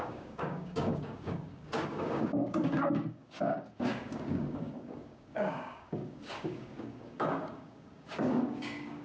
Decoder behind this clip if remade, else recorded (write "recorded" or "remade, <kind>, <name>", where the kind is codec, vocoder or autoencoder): remade, codec, DAC